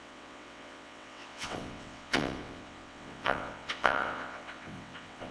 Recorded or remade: remade